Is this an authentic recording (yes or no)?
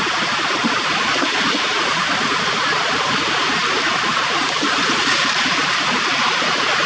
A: yes